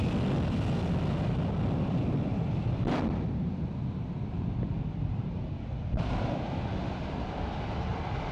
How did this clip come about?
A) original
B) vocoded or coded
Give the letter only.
B